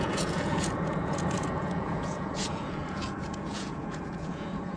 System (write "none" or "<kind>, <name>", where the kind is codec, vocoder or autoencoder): vocoder, Vocos